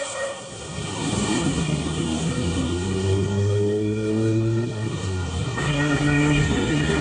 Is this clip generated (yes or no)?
yes